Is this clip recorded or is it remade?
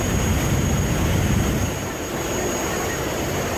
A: recorded